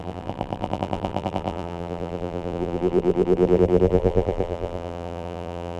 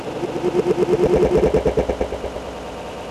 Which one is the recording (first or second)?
second